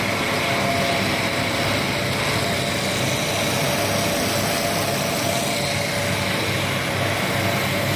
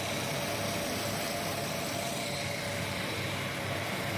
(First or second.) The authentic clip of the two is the first